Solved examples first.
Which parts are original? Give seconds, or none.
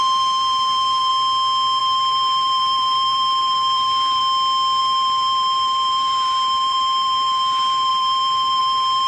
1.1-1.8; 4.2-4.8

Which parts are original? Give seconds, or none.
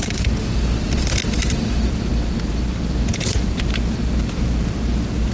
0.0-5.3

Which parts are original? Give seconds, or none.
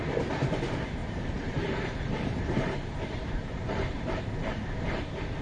0.0-1.0; 4.2-5.4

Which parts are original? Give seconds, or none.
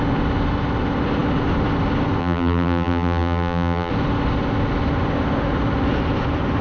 0.0-2.2; 3.9-6.6